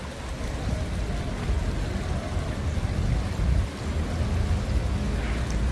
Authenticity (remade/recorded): recorded